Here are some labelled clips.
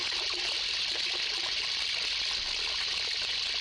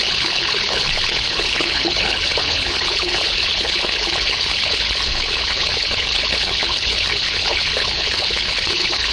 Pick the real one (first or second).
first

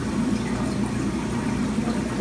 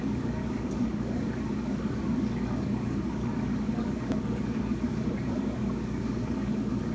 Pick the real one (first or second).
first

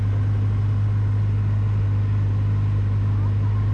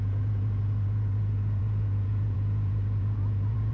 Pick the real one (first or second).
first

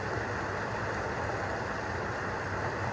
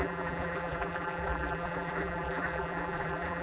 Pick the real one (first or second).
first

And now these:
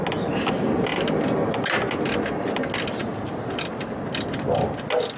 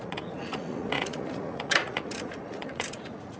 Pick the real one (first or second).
first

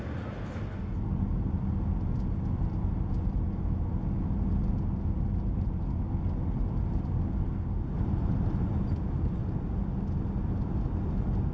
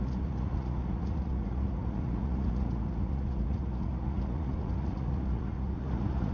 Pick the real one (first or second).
first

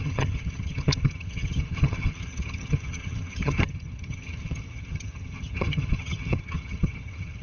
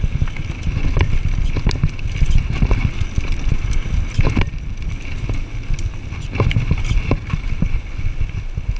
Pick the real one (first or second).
second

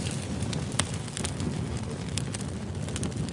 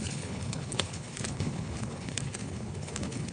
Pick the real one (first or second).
first